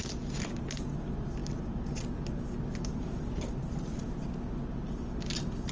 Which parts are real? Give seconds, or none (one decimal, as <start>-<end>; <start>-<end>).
0.0-3.6; 4.3-5.7

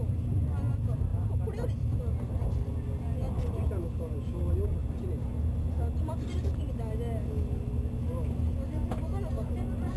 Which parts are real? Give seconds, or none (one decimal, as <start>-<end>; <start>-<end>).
0.0-10.0

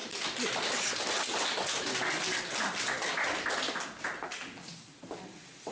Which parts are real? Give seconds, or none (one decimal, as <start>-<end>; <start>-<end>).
0.0-5.7

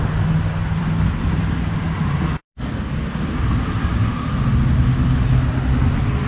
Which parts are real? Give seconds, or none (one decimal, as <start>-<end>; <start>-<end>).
0.0-0.6; 1.5-6.3

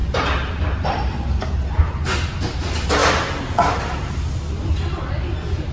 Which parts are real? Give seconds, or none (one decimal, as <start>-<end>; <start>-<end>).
0.0-5.7